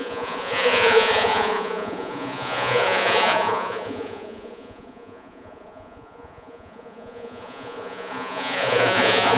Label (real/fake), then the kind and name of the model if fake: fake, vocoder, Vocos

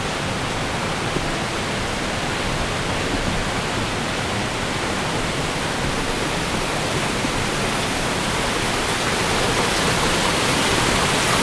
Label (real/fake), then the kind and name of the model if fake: real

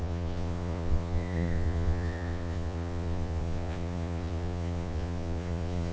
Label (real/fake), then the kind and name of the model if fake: fake, vocoder, Vocos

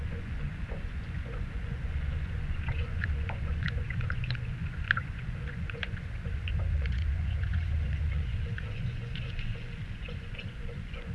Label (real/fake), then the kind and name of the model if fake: fake, vocoder, Vocos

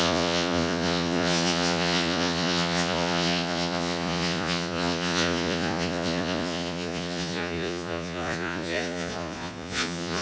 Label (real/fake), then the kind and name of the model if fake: fake, vocoder, Vocos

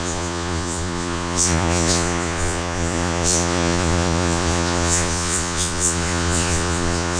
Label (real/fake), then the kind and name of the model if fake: fake, vocoder, Vocos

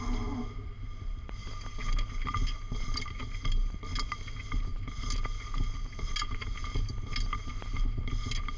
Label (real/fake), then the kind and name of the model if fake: real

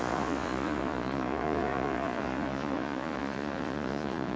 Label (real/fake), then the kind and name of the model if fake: fake, vocoder, Vocos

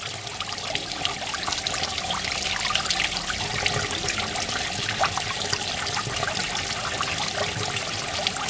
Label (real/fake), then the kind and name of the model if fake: real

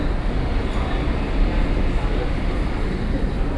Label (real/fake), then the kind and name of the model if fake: real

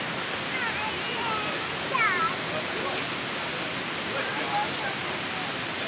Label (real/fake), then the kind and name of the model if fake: real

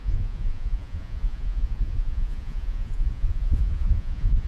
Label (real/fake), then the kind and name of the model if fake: fake, vocoder, Vocos